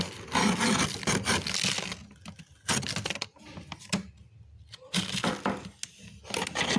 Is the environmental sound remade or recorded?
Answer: recorded